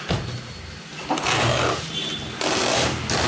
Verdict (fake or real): real